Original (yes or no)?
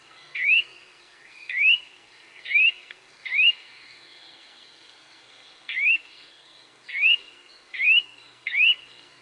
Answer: no